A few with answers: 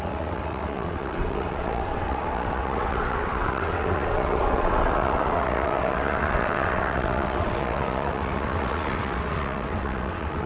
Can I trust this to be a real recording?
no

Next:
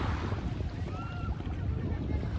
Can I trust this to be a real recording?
yes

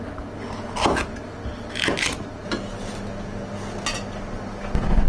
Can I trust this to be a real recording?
yes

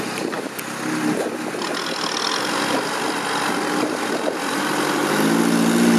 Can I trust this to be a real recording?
yes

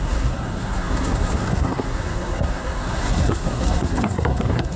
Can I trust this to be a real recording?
no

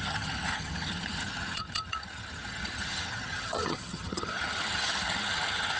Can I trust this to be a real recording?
no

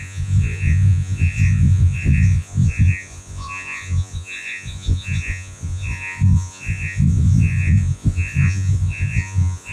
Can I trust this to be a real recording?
no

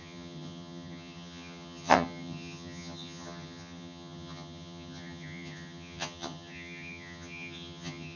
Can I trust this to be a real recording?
no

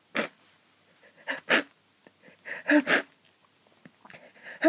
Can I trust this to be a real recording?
yes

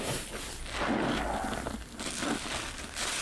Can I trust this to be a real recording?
yes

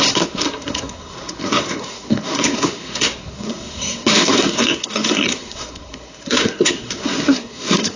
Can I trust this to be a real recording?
no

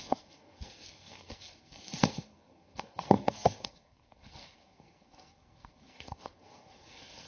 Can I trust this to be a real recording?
no